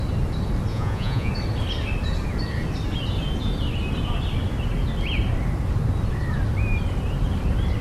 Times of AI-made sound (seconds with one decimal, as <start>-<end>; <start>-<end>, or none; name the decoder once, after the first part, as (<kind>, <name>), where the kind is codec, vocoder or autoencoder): 0.7-1.3 (vocoder, Vocos)